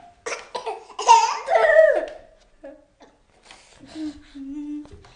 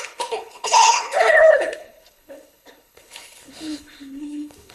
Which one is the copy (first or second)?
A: second